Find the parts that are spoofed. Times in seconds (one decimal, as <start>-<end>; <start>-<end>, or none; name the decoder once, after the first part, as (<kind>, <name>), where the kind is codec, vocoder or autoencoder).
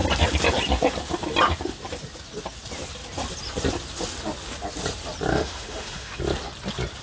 5.3-6.2 (autoencoder, DAC-VAE)